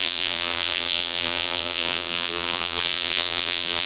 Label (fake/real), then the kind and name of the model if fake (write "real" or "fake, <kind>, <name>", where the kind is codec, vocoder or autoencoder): fake, vocoder, BigVGAN v2